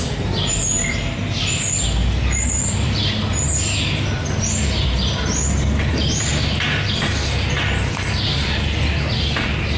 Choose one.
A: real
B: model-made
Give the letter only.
A